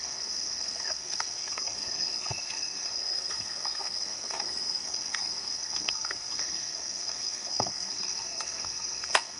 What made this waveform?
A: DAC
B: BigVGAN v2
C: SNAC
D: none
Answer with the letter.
C